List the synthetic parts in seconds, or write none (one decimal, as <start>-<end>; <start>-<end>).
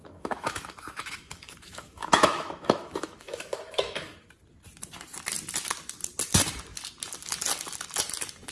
0.0-4.3